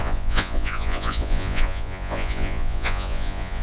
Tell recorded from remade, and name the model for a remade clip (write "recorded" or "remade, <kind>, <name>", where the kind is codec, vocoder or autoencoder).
remade, vocoder, Vocos